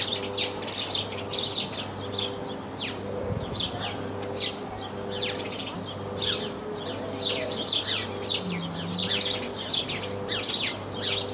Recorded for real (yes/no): yes